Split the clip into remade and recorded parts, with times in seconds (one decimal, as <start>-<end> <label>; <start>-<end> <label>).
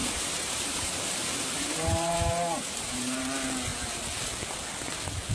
0.0-3.2 remade; 3.2-5.3 recorded